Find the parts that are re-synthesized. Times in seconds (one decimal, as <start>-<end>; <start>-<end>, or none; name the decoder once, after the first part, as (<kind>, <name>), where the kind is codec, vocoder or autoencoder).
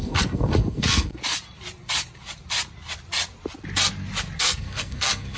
0.0-1.2 (codec, SNAC); 4.4-5.4